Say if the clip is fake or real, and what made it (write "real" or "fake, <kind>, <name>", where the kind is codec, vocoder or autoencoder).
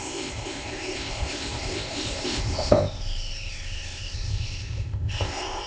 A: fake, codec, ZipCodec